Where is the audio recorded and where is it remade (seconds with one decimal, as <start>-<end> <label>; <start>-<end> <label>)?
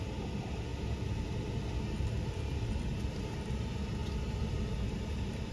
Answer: 0.0-5.5 recorded